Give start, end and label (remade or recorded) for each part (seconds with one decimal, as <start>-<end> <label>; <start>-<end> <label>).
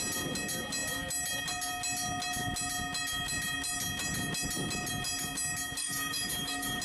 0.0-5.8 recorded; 5.8-6.8 remade